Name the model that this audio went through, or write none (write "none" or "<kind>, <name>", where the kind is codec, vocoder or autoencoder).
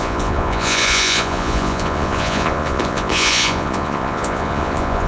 vocoder, Vocos